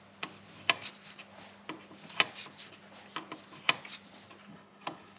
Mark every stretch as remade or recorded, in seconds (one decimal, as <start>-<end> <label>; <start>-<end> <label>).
0.0-4.5 recorded; 4.5-5.2 remade